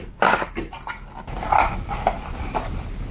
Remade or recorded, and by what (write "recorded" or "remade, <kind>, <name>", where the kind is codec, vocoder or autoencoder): recorded